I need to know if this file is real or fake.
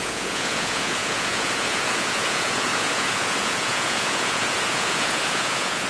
fake